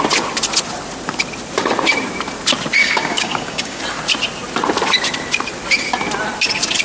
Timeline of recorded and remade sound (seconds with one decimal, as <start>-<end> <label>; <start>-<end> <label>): 0.0-2.8 recorded; 2.8-3.8 remade; 3.8-6.8 recorded